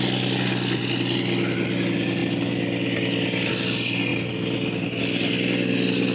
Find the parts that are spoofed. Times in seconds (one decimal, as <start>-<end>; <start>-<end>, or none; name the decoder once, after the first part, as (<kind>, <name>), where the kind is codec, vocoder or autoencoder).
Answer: none